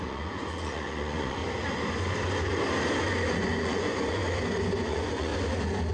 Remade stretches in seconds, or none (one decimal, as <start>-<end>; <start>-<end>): 0.0-1.4; 3.3-4.2; 4.7-5.3